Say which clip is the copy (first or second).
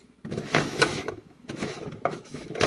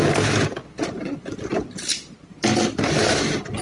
first